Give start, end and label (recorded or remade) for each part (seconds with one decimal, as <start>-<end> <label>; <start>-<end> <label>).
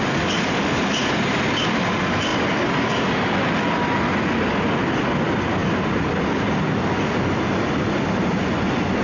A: 0.0-9.0 recorded